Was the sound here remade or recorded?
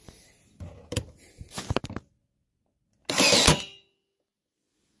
recorded